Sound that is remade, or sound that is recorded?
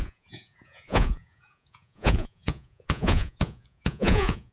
remade